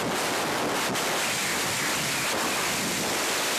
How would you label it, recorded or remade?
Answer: recorded